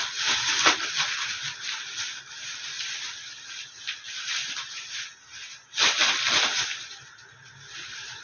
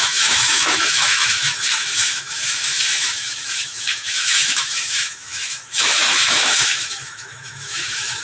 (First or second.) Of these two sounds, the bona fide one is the first